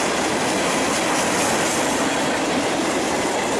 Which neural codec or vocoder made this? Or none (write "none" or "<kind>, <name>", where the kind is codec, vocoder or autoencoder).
vocoder, BigVGAN v2